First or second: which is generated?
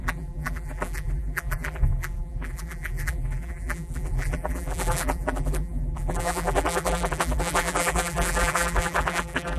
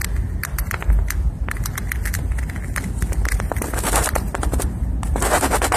first